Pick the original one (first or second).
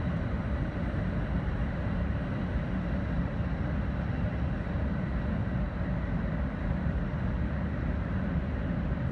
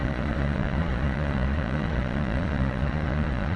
first